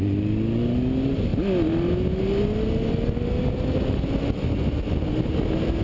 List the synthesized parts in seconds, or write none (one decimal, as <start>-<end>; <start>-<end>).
none